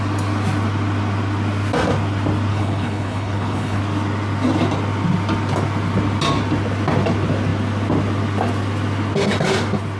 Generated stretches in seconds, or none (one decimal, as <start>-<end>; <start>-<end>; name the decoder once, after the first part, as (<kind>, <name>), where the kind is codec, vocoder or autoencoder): 2.5-3.8 (codec, HILCodec)